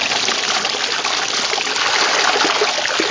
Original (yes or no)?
yes